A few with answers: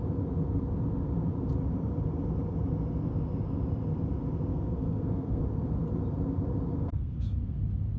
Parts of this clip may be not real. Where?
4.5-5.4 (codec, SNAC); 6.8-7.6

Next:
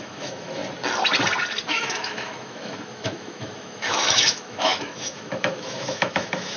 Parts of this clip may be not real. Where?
0.0-0.6 (autoencoder, DAC-VAE); 1.7-6.6

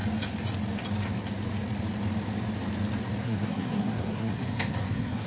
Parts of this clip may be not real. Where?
3.2-5.3 (codec, SNAC)